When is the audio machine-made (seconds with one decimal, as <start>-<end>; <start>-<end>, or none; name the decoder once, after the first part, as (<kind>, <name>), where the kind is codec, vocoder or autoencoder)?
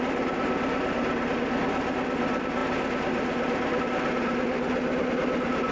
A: none